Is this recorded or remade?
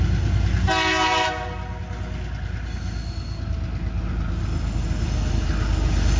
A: recorded